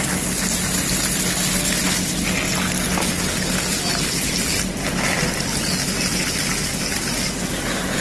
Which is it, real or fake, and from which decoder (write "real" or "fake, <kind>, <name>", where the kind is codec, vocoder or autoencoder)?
real